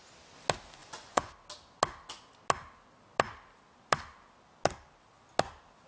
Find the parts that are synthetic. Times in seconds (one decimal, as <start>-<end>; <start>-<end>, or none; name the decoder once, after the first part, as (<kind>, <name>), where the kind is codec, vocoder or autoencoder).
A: 0.8-1.3 (vocoder, Vocos)